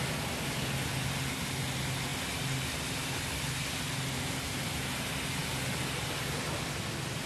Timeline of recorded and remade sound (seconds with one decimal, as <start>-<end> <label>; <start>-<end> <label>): 0.0-7.3 recorded